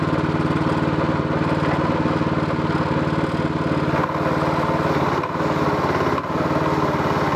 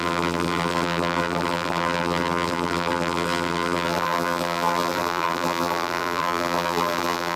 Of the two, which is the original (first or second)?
first